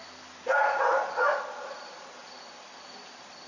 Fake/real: real